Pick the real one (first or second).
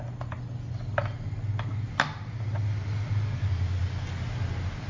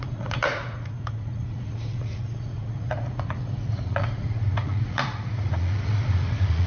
first